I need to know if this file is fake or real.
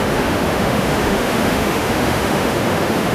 fake